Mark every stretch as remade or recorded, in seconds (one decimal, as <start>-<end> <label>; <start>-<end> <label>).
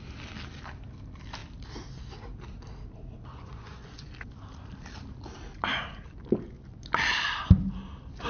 0.0-3.3 recorded; 3.3-4.1 remade; 4.1-8.3 recorded